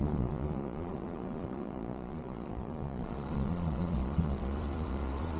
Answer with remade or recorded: remade